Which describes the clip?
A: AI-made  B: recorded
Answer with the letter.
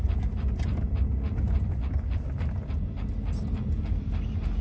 B